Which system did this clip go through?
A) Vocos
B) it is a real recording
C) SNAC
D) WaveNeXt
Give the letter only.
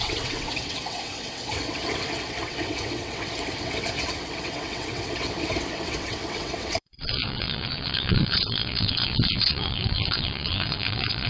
D